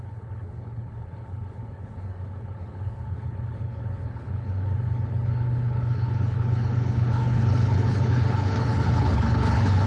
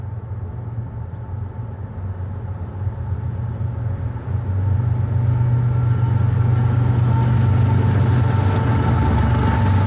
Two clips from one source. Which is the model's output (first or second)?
first